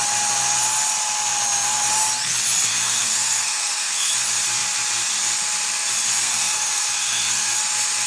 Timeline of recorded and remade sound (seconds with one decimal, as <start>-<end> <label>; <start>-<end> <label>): 0.0-2.7 recorded; 2.7-4.1 remade; 4.1-6.2 recorded; 6.2-7.6 remade; 7.6-8.1 recorded